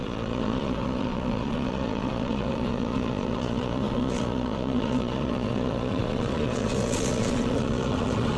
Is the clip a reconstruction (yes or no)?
yes